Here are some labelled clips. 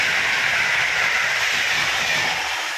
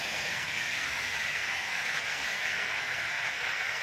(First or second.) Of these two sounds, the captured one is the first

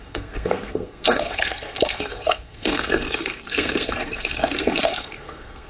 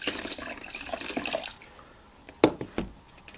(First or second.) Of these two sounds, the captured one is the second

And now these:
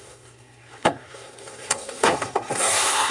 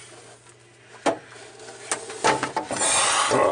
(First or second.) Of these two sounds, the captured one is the second